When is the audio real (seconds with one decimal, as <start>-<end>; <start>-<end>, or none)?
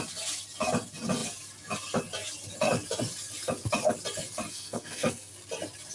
0.0-4.5; 5.3-5.9